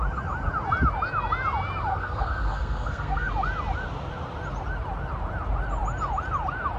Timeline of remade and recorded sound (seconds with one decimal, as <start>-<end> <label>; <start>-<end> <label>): 0.0-1.9 recorded; 1.9-3.3 remade; 3.3-6.8 recorded